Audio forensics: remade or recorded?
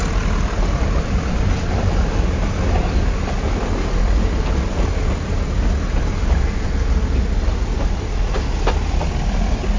recorded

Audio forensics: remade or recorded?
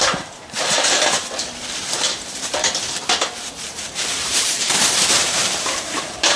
remade